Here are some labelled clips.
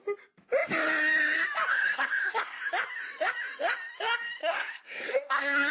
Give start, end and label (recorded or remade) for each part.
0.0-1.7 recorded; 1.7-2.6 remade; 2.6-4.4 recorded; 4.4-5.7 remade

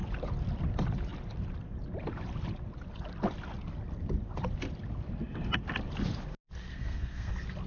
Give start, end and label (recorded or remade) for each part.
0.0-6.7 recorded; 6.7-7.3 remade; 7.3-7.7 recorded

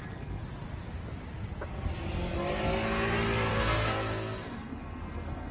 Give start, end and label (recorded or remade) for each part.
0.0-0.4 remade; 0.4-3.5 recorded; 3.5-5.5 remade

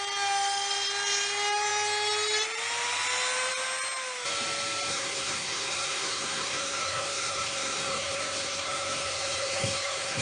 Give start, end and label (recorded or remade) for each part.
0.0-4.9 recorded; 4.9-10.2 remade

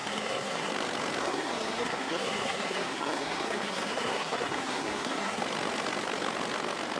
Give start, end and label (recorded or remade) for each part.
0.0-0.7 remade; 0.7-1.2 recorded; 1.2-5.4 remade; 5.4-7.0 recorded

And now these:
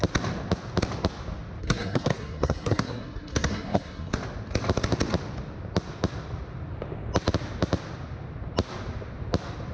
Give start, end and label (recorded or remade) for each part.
0.0-1.6 recorded; 1.6-4.1 remade; 4.1-9.7 recorded

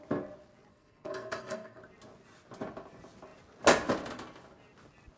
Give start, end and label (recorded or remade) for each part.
0.0-0.7 recorded; 0.7-1.8 remade; 1.8-5.2 recorded